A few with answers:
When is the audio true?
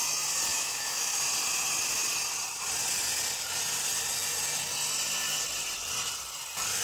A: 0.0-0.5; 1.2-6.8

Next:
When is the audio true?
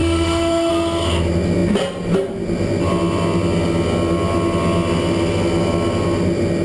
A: 0.7-6.6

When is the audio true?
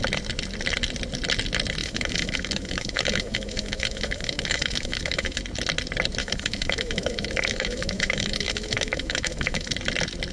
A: 0.0-1.8; 5.4-6.2; 9.7-10.3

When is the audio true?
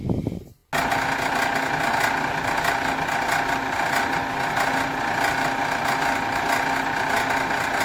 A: 0.0-7.8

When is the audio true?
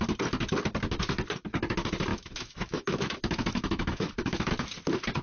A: 0.0-2.1; 4.5-5.2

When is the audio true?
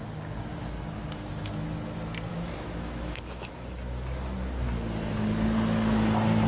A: 0.0-2.3; 3.5-6.5